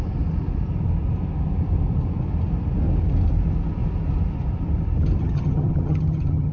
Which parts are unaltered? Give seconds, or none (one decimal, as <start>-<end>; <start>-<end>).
0.0-5.2